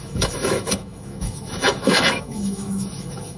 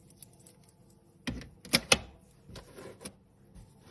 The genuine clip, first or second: second